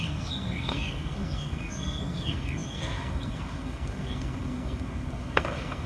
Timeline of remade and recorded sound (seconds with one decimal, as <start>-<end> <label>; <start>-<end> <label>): 0.0-5.9 remade